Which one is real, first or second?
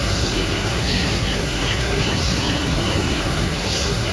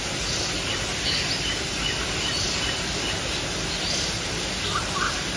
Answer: second